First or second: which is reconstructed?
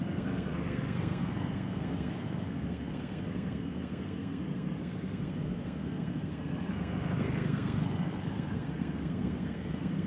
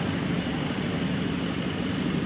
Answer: first